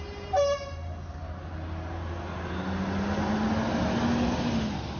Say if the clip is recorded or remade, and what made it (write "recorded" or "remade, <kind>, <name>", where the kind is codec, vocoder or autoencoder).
recorded